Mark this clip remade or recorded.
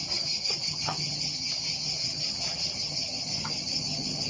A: remade